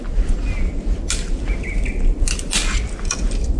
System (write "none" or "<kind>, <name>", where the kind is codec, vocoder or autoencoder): none